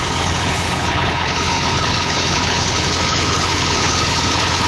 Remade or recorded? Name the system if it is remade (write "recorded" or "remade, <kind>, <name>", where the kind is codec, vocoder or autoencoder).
remade, codec, HILCodec